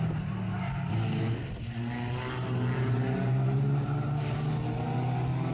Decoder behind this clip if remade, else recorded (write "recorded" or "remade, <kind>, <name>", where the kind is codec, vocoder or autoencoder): recorded